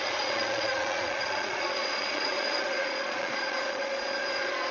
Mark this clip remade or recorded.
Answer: remade